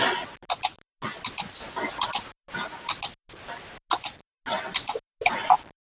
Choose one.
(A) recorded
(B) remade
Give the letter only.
A